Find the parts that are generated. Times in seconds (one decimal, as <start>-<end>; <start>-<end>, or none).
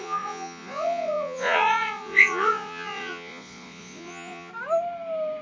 0.0-4.5